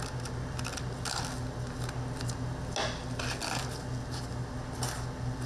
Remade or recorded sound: recorded